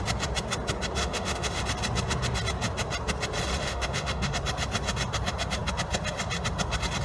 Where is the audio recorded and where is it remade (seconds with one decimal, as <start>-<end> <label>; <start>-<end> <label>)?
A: 0.0-1.0 recorded; 1.0-1.6 remade; 1.6-3.6 recorded; 3.6-4.3 remade; 4.3-7.0 recorded